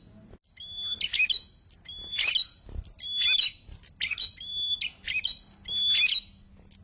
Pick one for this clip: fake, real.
real